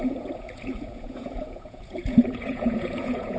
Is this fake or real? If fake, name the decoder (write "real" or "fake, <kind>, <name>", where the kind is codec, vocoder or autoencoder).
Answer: fake, vocoder, Vocos